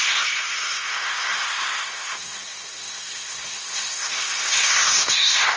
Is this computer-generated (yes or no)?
yes